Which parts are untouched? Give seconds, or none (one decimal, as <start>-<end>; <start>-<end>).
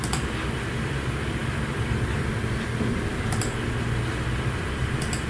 0.0-5.3